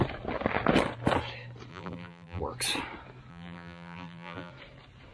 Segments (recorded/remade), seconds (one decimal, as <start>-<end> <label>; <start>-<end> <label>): 0.0-1.7 recorded; 1.7-2.4 remade; 2.4-3.3 recorded; 3.3-4.5 remade; 4.5-5.1 recorded